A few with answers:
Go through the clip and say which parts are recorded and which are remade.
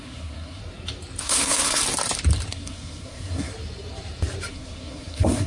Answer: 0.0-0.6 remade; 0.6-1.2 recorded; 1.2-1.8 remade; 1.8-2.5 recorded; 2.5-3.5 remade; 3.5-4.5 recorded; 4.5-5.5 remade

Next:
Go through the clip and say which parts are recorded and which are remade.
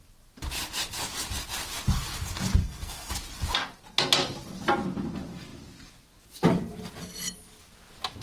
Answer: 0.0-2.6 recorded; 2.6-3.1 remade; 3.1-8.2 recorded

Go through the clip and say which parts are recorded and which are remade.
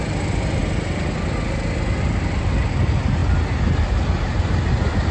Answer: 0.0-5.1 recorded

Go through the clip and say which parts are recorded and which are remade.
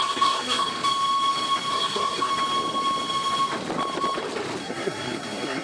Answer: 0.0-0.7 remade; 0.7-1.7 recorded; 1.7-2.3 remade; 2.3-4.6 recorded; 4.6-5.6 remade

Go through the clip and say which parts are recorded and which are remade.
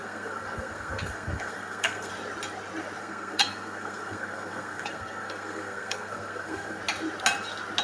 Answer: 0.0-2.1 remade; 2.1-3.0 recorded; 3.0-6.8 remade; 6.8-7.8 recorded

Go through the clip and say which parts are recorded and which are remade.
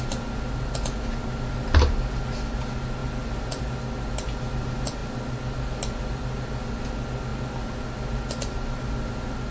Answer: 0.0-9.5 recorded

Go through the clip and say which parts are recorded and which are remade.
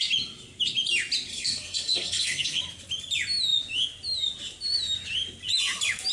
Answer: 0.0-1.3 recorded; 1.3-2.6 remade; 2.6-6.1 recorded